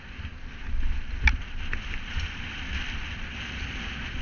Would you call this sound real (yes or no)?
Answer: yes